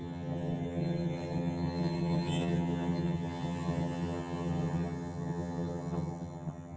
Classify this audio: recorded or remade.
remade